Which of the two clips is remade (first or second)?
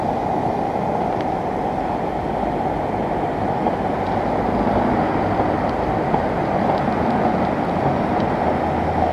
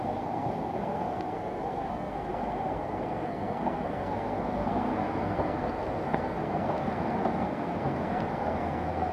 second